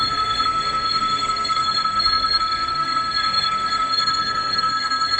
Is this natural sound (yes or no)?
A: no